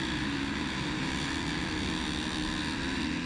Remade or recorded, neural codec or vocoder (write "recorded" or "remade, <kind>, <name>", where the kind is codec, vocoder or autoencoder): recorded